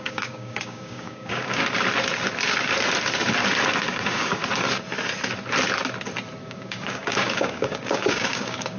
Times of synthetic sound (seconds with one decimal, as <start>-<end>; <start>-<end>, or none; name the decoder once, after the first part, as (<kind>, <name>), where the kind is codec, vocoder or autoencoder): 0.0-1.6 (codec, DAC); 3.9-4.4; 6.4-8.8